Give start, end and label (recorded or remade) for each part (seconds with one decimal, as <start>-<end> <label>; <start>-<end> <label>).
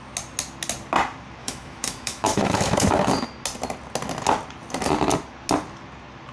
0.0-1.4 recorded; 1.4-3.1 remade; 3.1-6.3 recorded